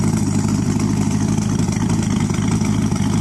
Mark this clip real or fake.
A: real